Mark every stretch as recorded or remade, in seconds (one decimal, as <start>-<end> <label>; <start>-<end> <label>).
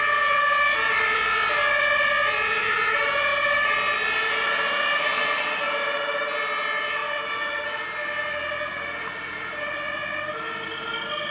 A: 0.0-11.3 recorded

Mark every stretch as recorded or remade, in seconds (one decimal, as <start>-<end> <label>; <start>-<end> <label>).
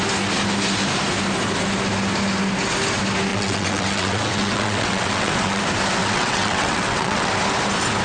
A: 0.0-3.3 recorded; 3.3-5.6 remade; 5.6-6.0 recorded; 6.0-7.3 remade; 7.3-8.0 recorded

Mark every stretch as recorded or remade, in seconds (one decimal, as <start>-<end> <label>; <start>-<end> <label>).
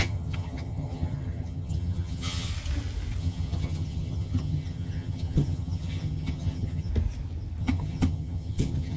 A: 0.0-2.5 remade; 2.5-3.2 recorded; 3.2-6.9 remade; 6.9-7.6 recorded; 7.6-9.0 remade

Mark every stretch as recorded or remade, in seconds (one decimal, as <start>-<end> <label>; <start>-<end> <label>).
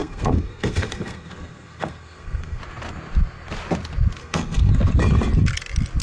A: 0.0-2.6 remade; 2.6-4.2 recorded; 4.2-4.7 remade; 4.7-6.0 recorded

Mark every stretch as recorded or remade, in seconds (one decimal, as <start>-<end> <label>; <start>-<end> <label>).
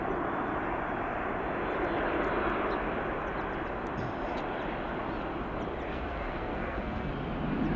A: 0.0-5.9 recorded; 5.9-7.1 remade; 7.1-7.8 recorded